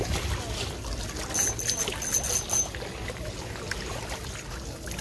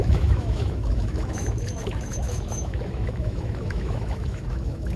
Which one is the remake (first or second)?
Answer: second